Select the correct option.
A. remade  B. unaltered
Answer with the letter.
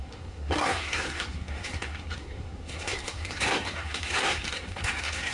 A